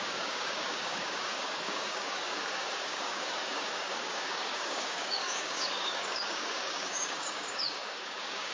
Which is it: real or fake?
fake